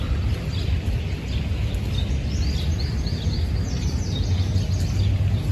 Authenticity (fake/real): real